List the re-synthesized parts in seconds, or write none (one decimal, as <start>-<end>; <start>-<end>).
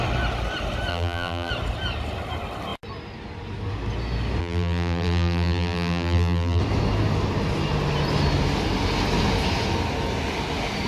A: 0.9-1.5; 4.4-6.6